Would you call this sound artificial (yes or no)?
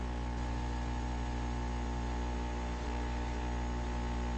no